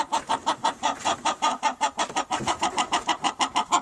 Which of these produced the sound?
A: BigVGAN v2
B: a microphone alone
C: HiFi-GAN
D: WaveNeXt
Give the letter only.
A